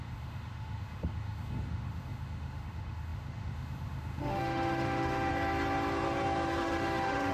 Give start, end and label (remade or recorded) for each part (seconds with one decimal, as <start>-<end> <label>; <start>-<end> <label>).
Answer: 0.0-5.3 remade; 5.3-6.6 recorded; 6.6-7.3 remade